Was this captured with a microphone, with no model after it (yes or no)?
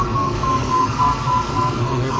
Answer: no